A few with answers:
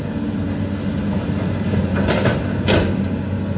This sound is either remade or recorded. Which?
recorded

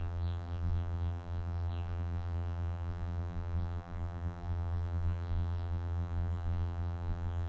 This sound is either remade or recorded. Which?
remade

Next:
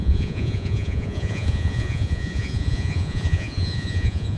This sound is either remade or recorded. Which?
remade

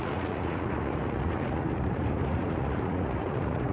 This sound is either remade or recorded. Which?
remade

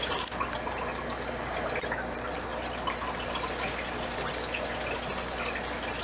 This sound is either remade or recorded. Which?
recorded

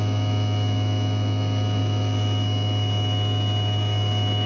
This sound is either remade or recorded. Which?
recorded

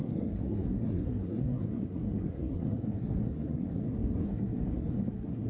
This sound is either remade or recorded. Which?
remade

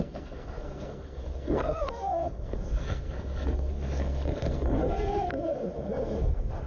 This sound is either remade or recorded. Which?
remade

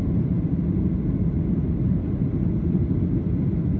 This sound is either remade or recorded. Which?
recorded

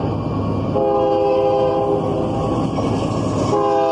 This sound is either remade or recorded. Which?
recorded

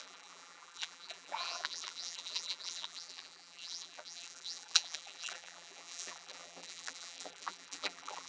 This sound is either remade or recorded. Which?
remade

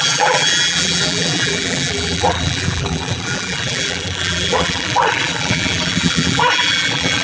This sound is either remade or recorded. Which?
remade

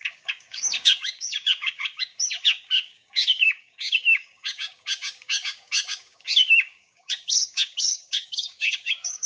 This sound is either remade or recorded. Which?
remade